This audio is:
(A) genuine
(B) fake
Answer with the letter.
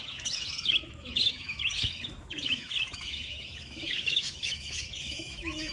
B